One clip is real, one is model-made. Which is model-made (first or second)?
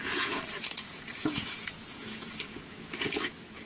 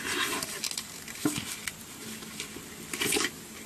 first